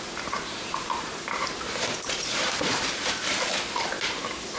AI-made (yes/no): yes